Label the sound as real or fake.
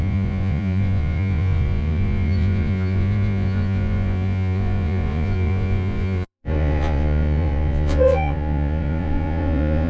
fake